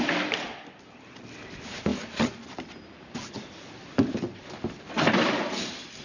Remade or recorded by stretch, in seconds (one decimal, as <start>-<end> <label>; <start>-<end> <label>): 0.0-1.9 recorded; 1.9-4.1 remade; 4.1-6.0 recorded